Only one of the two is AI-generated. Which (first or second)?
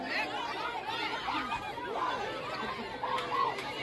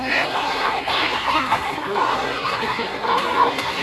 second